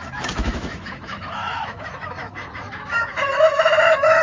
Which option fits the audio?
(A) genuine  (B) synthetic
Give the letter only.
B